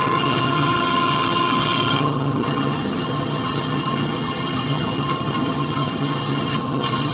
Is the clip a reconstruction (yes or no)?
yes